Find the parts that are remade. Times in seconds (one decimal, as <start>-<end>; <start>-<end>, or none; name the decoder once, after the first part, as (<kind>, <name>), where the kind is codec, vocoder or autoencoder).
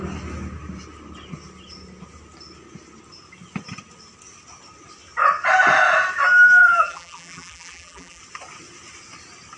6.6-8.2 (vocoder, BigVGAN v2)